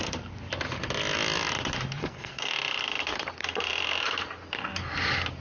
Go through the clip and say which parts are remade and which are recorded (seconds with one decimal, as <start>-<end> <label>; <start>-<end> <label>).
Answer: 0.0-2.0 recorded; 2.0-2.5 remade; 2.5-5.4 recorded